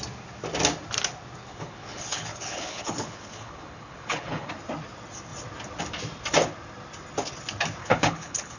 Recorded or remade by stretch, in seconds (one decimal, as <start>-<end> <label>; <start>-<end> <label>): 0.0-1.4 recorded; 1.4-4.5 remade; 4.5-7.8 recorded; 7.8-8.6 remade